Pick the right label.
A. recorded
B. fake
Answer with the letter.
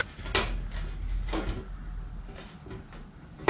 A